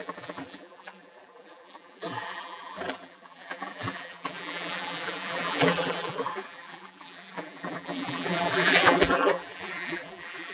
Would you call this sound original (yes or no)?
no